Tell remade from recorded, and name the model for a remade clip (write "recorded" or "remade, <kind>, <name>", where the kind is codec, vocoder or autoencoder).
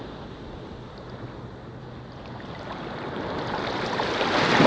recorded